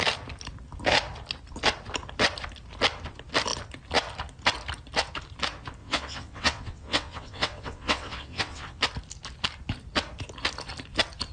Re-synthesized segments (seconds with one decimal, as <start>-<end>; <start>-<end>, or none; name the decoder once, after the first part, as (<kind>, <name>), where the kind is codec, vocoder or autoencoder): 5.8-8.8 (vocoder, WaveNeXt)